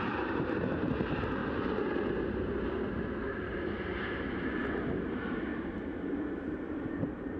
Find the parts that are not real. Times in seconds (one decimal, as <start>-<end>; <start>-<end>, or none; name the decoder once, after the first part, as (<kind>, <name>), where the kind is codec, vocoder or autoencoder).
0.0-1.4 (vocoder, BigVGAN v2); 3.3-5.5; 6.1-7.4